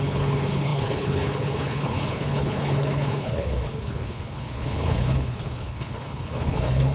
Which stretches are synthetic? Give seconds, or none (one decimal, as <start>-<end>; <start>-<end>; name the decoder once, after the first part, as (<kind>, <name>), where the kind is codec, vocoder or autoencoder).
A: 0.0-6.9 (codec, HILCodec)